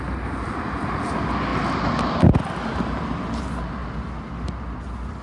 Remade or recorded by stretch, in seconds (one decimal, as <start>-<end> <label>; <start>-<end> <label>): 0.0-5.2 recorded